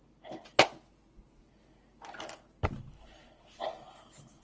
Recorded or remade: recorded